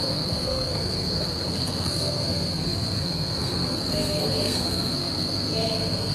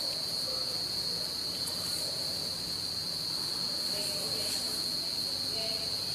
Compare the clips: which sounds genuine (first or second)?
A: second